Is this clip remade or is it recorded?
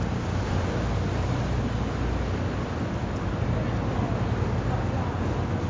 recorded